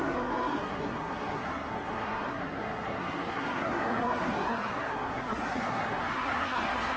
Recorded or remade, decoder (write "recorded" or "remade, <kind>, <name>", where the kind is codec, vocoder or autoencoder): remade, codec, SNAC